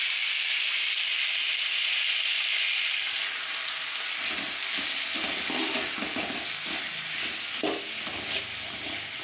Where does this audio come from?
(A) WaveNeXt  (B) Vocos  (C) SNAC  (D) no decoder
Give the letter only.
D